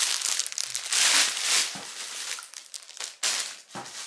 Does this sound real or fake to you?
real